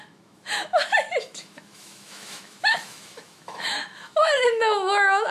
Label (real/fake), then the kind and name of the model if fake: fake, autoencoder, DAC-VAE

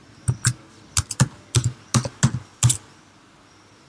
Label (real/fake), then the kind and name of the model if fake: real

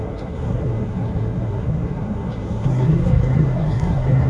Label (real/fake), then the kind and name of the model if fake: fake, codec, SNAC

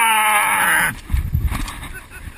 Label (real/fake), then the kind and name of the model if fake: real